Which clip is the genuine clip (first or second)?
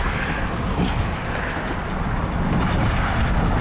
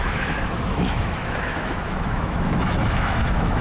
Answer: first